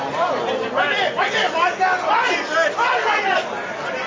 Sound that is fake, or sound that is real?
real